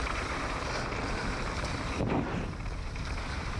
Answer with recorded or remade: remade